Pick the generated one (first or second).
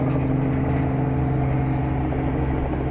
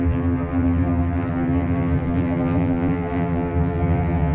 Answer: second